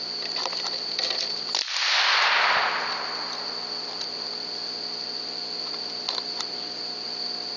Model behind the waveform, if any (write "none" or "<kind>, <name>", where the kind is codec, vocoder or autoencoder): none